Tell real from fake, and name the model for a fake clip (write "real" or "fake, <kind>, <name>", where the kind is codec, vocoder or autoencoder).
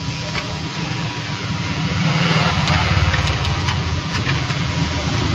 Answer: fake, vocoder, BigVGAN v2